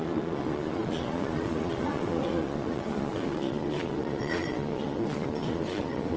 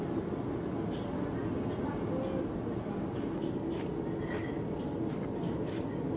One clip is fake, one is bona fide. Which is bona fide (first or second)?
second